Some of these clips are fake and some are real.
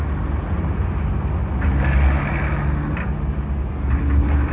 real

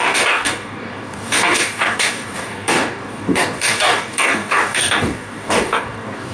fake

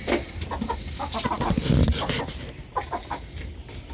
real